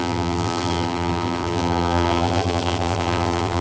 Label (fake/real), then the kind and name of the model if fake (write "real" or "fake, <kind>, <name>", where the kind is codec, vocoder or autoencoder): fake, vocoder, BigVGAN v2